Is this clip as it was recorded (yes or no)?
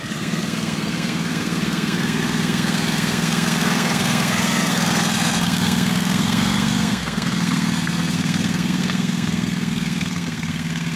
no